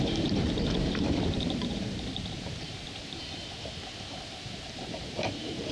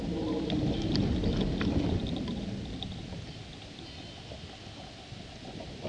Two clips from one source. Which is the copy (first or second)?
first